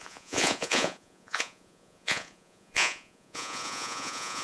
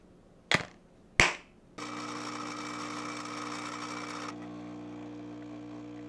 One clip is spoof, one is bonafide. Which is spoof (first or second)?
first